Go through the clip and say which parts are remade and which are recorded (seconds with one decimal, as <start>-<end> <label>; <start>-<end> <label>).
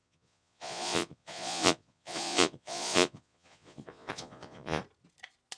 0.0-4.8 remade; 4.8-5.6 recorded